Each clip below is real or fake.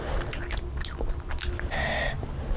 real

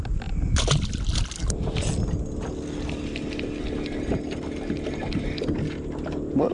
real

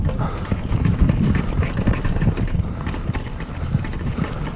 real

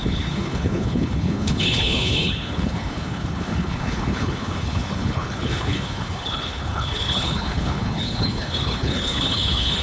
fake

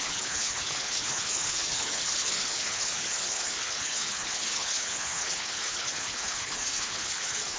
fake